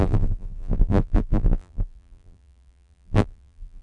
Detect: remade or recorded remade